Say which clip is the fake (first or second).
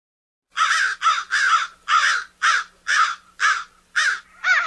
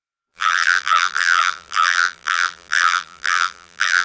second